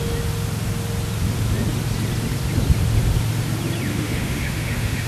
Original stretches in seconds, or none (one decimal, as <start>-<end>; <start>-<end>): 0.0-3.9